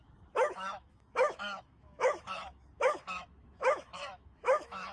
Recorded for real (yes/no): no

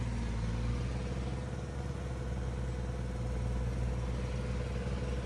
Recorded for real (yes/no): yes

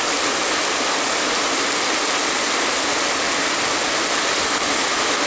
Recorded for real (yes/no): yes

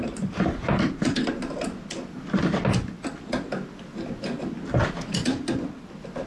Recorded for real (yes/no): yes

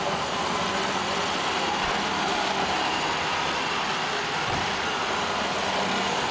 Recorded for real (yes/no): yes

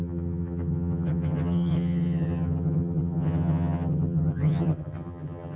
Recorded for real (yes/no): no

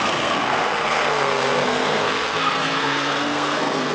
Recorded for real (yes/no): no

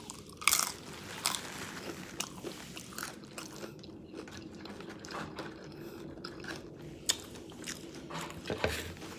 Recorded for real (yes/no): yes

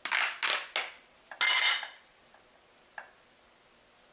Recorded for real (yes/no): yes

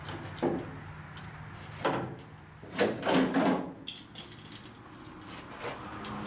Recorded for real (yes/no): yes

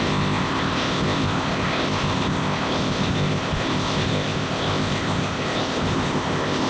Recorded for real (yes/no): no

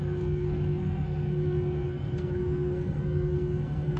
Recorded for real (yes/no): no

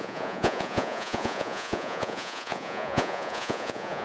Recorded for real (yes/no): no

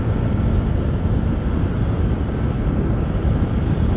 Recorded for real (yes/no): yes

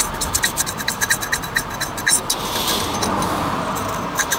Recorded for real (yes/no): yes